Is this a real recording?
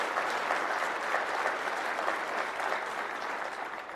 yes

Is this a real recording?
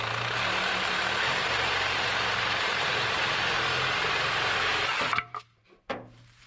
no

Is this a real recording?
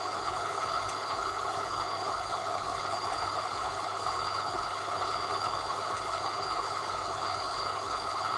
no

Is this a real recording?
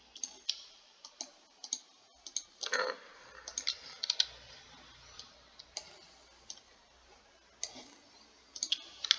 yes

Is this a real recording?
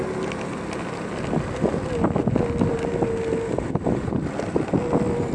yes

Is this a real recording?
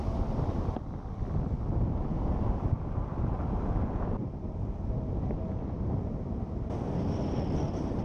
yes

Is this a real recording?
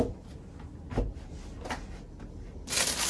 yes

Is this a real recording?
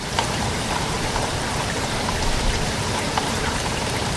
no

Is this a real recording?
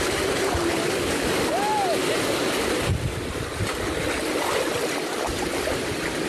yes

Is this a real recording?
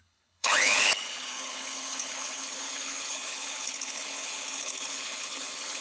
no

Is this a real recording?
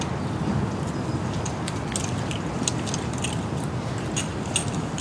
yes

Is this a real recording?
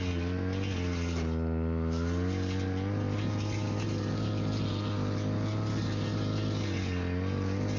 yes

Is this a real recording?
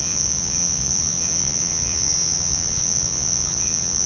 no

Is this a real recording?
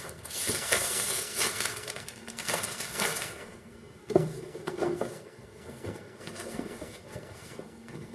no